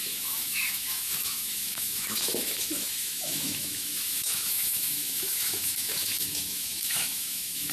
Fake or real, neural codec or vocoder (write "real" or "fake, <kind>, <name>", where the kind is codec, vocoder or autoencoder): fake, autoencoder, DAC-VAE